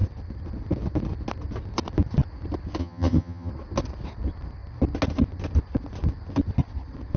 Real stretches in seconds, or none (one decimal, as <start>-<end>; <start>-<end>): 0.0-2.8; 3.5-7.2